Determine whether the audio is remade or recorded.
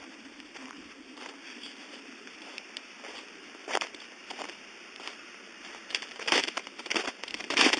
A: remade